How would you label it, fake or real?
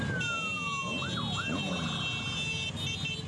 real